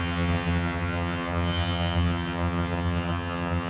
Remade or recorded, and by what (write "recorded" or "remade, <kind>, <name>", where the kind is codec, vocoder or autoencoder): remade, vocoder, HiFi-GAN